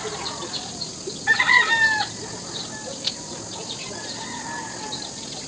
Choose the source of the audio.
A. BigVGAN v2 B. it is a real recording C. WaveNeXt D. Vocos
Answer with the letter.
B